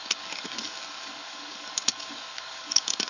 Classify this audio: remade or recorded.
remade